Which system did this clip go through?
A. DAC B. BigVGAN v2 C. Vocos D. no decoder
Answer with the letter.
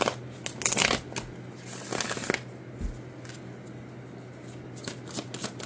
D